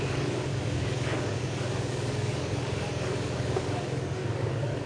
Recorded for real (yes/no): no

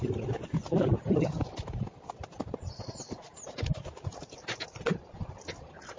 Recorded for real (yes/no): yes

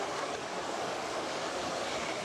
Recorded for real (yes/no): no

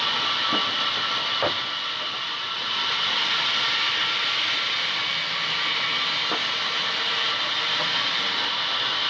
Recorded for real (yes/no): yes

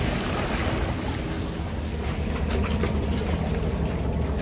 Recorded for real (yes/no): yes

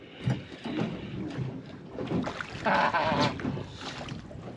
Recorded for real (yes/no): yes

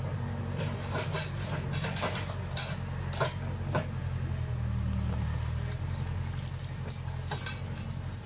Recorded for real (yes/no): yes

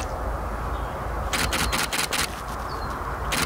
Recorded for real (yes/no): yes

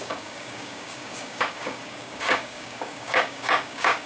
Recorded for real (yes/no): no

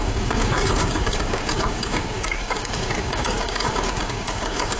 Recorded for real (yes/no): no